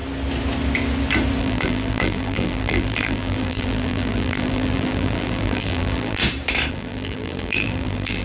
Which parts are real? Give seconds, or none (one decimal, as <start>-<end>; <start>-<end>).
0.0-1.4; 6.2-6.7